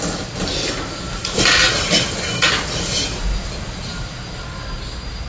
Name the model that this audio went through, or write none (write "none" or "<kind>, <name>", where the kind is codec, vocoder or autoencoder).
none